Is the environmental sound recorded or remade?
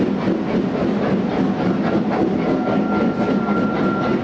recorded